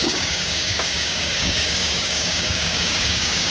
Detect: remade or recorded remade